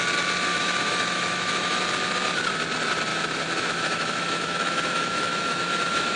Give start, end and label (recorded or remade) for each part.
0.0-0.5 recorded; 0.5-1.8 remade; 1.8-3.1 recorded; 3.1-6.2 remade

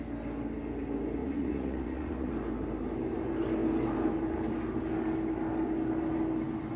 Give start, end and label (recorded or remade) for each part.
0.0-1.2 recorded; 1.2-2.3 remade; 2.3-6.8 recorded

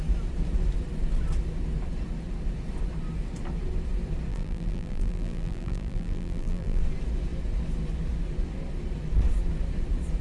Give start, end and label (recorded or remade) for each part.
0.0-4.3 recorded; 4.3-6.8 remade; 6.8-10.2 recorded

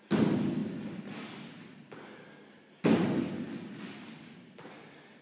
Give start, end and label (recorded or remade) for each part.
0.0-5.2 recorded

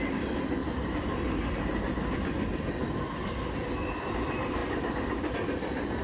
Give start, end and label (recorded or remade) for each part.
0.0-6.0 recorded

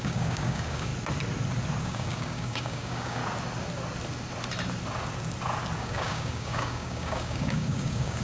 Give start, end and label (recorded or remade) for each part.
0.0-0.9 remade; 0.9-1.8 recorded; 1.8-3.2 remade; 3.2-5.8 recorded; 5.8-8.2 remade

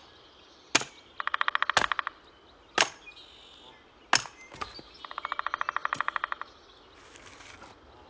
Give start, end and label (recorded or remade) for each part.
0.0-8.1 recorded

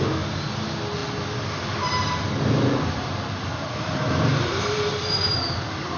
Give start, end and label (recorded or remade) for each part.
0.0-6.0 recorded